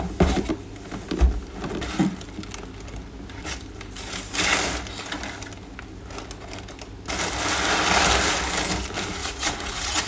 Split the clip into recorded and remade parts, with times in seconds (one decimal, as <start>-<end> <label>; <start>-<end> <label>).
0.0-9.2 recorded; 9.2-10.1 remade